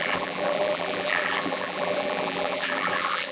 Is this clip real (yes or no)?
no